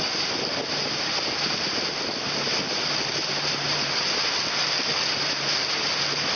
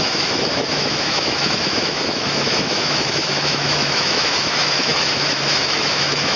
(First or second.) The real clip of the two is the first